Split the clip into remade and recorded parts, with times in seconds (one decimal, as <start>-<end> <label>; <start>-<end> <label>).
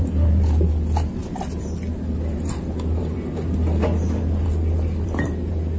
0.0-5.8 recorded